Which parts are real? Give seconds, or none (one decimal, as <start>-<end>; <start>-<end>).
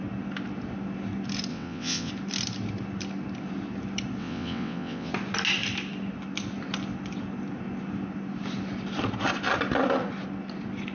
0.0-1.5; 2.1-4.2; 5.1-10.9